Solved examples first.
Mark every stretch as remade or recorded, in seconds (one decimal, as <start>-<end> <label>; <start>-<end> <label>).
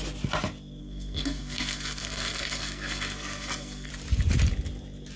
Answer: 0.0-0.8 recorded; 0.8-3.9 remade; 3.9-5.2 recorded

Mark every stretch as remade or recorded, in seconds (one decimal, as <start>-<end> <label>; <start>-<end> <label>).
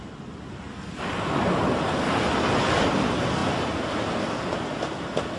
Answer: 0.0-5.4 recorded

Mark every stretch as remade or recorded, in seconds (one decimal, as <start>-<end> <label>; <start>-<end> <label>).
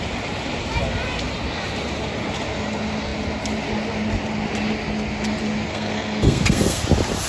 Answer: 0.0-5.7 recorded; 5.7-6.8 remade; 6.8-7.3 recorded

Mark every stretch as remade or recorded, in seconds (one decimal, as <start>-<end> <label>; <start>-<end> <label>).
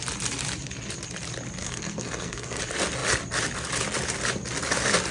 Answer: 0.0-1.6 recorded; 1.6-2.6 remade; 2.6-5.1 recorded